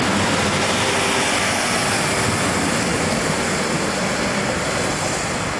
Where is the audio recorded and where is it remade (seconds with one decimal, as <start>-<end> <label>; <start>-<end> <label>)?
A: 0.0-5.6 recorded